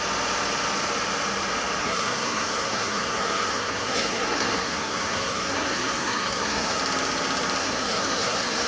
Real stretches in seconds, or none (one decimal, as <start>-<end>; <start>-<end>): 0.0-1.8; 6.8-7.6